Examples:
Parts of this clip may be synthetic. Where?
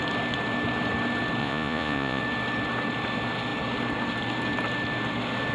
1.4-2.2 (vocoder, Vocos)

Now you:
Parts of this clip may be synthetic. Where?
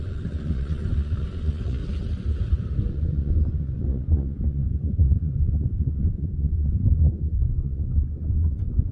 0.0-1.8 (vocoder, Vocos); 2.9-8.9